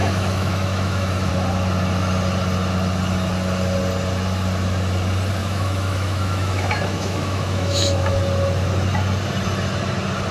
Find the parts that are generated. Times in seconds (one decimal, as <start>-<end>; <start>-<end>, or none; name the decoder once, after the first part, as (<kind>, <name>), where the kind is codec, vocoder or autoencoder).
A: 0.0-1.3 (autoencoder, DAC-VAE); 5.4-8.2